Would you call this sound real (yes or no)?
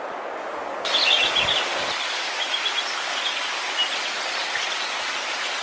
yes